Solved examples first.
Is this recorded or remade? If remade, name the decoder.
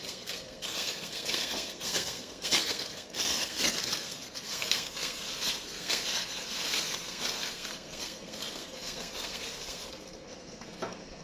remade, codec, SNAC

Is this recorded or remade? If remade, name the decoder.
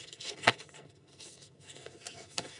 remade, codec, SNAC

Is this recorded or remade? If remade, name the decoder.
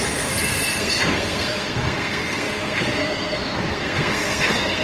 remade, codec, SNAC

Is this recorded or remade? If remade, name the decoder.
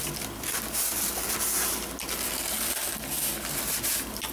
recorded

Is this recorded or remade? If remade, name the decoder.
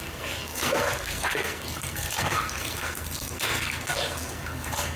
remade, codec, SNAC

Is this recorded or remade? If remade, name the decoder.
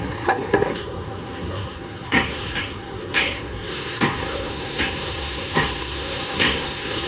remade, codec, SNAC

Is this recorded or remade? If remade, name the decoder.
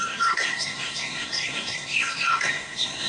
remade, codec, SNAC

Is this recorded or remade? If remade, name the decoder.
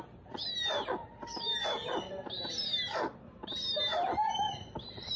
recorded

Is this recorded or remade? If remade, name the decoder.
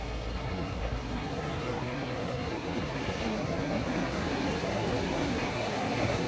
remade, codec, SNAC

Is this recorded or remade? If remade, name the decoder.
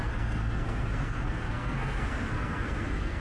remade, codec, SNAC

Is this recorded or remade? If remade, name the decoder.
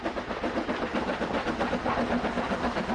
recorded